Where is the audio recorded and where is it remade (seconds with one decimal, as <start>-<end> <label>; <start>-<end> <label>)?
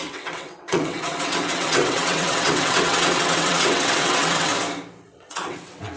0.0-4.5 remade; 4.5-5.2 recorded; 5.2-6.0 remade